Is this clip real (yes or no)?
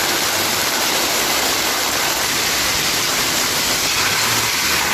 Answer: yes